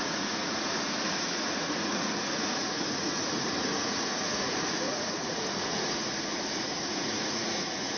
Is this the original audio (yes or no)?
no